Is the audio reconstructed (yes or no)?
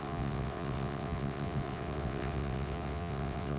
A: yes